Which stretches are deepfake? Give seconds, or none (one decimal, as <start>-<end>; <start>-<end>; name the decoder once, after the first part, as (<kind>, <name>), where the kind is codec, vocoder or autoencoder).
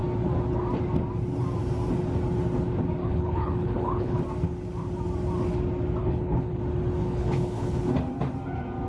3.0-4.2 (codec, HILCodec); 6.0-6.6; 7.0-7.9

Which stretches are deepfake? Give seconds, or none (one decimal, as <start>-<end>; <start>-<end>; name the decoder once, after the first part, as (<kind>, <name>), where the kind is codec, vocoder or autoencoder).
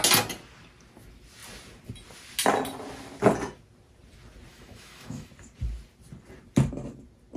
4.5-5.3 (autoencoder, DAC-VAE)